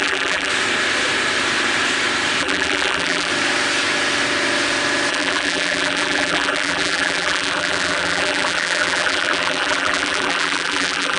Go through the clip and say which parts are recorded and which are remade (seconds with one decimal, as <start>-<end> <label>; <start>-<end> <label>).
0.0-0.5 remade; 0.5-2.4 recorded; 2.4-3.3 remade; 3.3-5.1 recorded; 5.1-11.2 remade

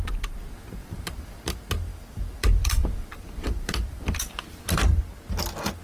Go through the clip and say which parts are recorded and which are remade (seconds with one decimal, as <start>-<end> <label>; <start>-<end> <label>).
0.0-0.8 recorded; 0.8-1.5 remade; 1.5-1.9 recorded; 1.9-5.0 remade; 5.0-5.8 recorded